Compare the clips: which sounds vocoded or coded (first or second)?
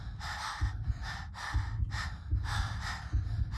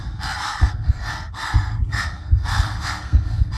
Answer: second